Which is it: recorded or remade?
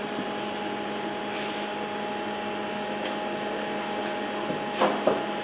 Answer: recorded